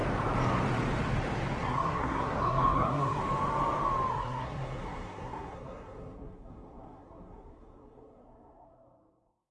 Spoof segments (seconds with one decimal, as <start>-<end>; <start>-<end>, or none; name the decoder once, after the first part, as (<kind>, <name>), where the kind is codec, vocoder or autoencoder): 1.6-3.2 (codec, SNAC); 4.1-9.5